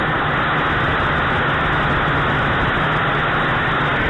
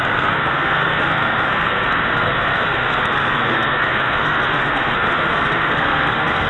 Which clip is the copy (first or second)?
second